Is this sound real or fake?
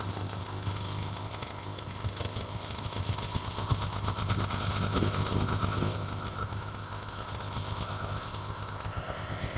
fake